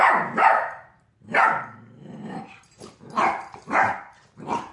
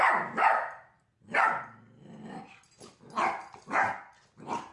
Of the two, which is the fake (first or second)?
first